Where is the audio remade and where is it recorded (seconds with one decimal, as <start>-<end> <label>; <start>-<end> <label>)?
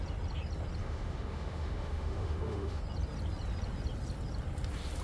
0.0-0.8 recorded; 0.8-2.8 remade; 2.8-5.0 recorded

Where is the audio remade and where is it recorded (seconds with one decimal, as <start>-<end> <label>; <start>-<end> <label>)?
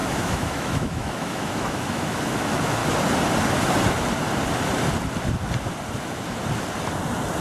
0.0-2.8 remade; 2.8-7.4 recorded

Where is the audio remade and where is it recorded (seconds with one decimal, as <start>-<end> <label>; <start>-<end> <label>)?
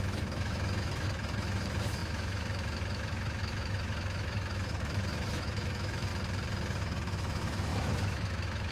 0.0-6.1 remade; 6.1-6.8 recorded; 6.8-8.7 remade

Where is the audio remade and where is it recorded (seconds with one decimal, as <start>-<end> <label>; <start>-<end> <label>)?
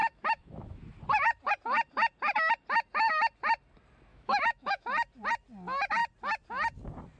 0.0-0.8 remade; 0.8-4.1 recorded; 4.1-4.9 remade; 4.9-7.2 recorded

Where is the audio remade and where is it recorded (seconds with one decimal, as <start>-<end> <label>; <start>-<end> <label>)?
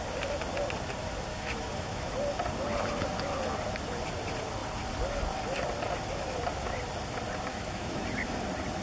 0.0-1.3 recorded; 1.3-2.1 remade; 2.1-7.5 recorded; 7.5-8.0 remade; 8.0-8.8 recorded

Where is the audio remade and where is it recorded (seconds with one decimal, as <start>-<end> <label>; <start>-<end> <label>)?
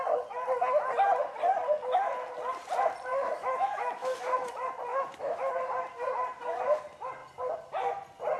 0.0-3.1 recorded; 3.1-4.5 remade; 4.5-4.9 recorded; 4.9-5.5 remade; 5.5-8.4 recorded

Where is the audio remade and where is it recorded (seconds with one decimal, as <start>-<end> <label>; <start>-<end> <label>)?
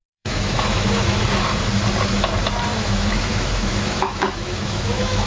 0.0-1.2 remade; 1.2-2.7 recorded; 2.7-5.3 remade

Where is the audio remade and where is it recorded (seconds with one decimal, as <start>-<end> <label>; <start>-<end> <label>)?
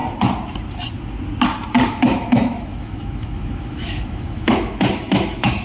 0.0-1.9 recorded; 1.9-5.6 remade